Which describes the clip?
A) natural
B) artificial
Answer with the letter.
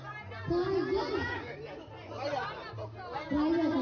A